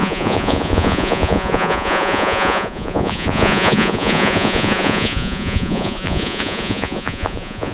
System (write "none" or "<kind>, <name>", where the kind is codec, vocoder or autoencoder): vocoder, Vocos